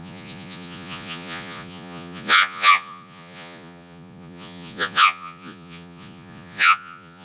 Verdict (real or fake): fake